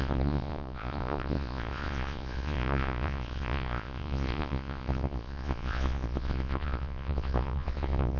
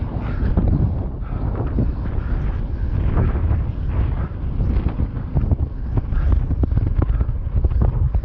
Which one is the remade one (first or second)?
first